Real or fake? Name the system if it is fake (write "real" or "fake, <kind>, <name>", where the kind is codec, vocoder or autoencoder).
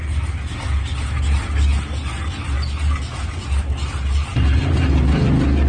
real